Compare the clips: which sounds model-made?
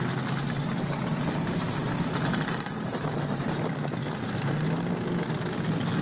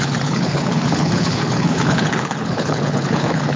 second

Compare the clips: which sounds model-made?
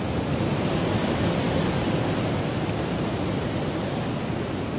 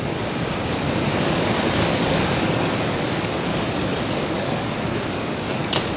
second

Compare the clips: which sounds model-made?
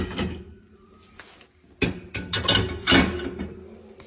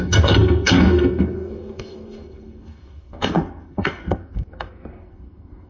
second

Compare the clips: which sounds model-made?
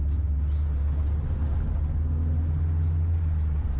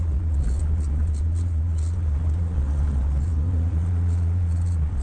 second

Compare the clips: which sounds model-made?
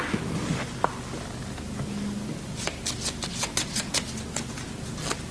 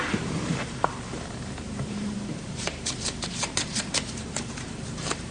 second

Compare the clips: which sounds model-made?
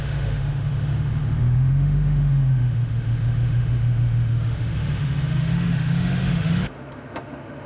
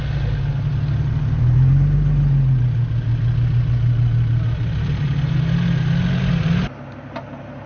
first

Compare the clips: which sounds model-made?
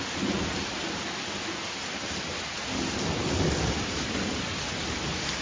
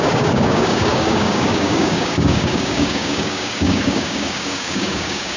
second